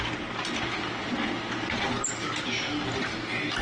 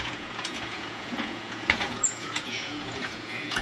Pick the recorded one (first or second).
first